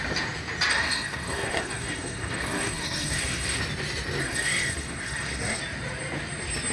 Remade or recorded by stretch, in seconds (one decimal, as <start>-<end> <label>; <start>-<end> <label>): 0.0-0.7 recorded; 0.7-3.6 remade; 3.6-4.2 recorded; 4.2-5.6 remade; 5.6-6.7 recorded